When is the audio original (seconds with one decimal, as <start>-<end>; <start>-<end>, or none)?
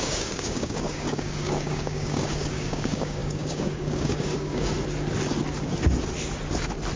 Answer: 4.7-7.0